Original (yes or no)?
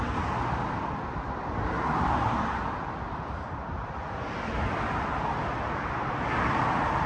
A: yes